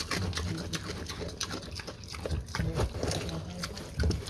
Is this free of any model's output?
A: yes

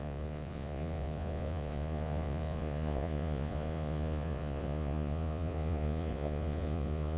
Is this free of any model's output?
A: no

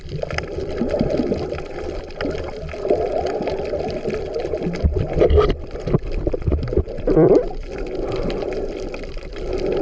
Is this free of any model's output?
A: yes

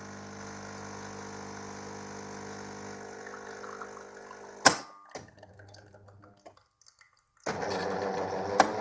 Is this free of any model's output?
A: yes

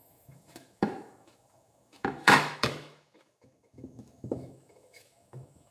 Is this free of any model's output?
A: no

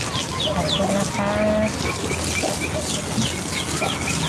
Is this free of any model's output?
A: yes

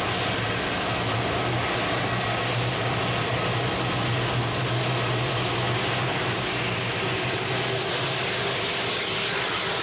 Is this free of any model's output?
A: yes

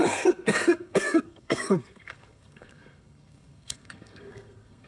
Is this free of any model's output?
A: no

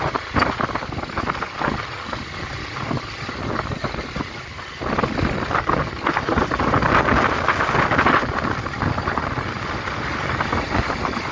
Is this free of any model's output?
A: yes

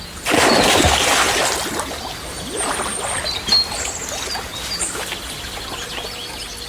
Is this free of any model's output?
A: yes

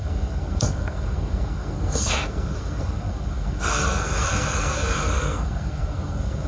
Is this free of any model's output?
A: no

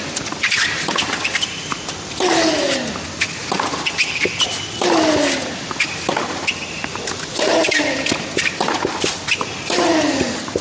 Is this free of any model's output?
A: yes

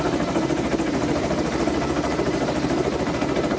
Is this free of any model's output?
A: no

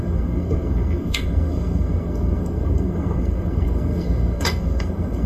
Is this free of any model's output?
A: no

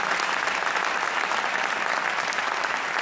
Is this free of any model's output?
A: yes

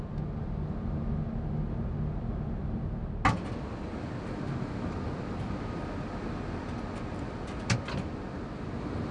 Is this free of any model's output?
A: yes